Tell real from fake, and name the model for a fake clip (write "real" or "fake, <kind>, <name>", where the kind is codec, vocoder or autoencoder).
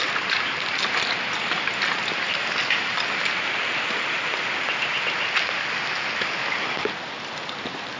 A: real